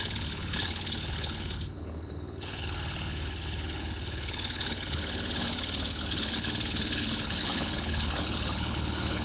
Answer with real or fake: fake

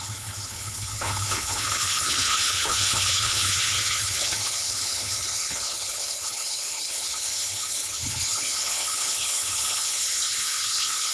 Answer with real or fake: fake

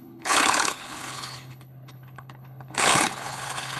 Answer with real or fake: fake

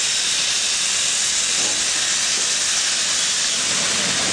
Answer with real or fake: real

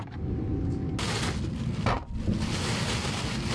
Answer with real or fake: real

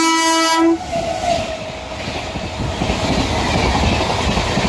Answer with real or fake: real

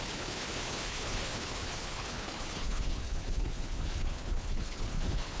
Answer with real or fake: fake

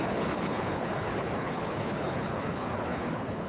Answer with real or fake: fake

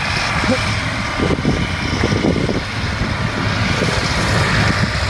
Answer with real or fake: real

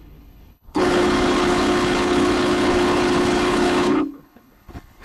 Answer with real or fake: fake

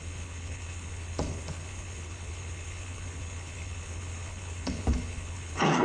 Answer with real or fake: fake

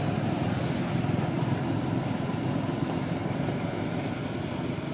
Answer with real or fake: real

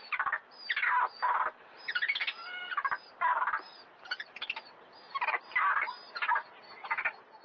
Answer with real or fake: real